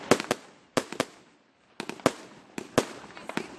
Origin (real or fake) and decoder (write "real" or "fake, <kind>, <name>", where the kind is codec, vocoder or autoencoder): real